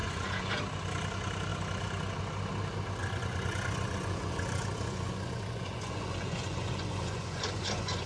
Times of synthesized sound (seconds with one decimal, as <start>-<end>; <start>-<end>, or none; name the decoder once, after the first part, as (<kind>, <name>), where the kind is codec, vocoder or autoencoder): 0.0-0.6 (vocoder, Vocos); 3.0-8.1